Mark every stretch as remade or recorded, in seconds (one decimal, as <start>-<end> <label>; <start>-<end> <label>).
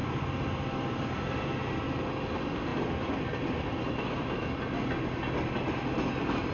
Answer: 0.0-6.5 recorded